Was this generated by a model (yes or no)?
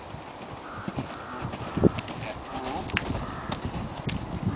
no